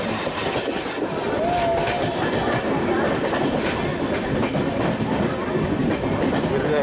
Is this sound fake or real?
real